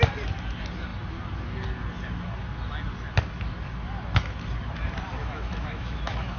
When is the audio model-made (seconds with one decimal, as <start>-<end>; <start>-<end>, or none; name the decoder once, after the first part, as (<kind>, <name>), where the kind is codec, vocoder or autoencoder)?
5.2-6.4 (autoencoder, DAC-VAE)